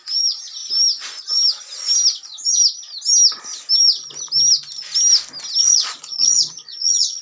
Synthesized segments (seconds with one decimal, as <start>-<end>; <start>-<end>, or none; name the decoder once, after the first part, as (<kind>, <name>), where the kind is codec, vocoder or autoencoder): 5.6-7.2 (vocoder, Vocos)